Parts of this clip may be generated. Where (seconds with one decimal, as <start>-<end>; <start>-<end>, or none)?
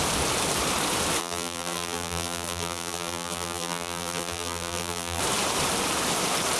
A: 1.2-5.2